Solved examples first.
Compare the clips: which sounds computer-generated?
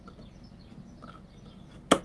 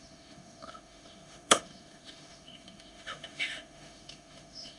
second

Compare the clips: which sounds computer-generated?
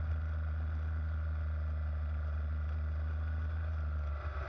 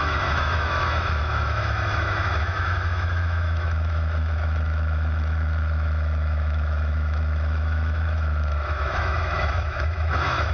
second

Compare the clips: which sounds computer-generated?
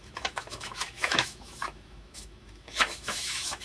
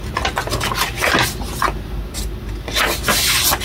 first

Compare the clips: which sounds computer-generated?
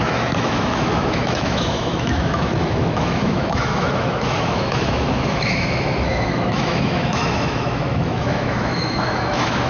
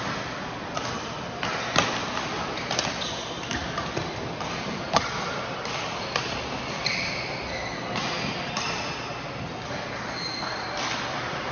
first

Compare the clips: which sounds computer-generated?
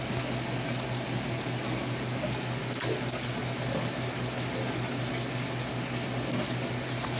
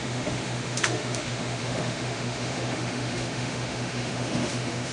second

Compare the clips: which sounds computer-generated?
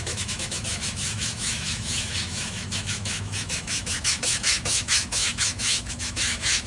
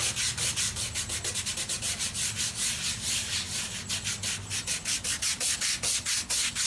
first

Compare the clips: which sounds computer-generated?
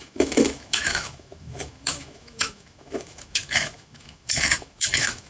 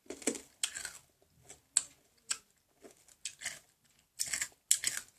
first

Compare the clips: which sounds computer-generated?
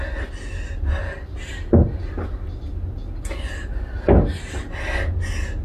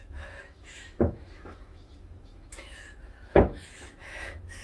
second